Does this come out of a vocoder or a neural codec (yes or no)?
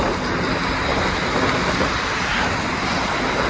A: no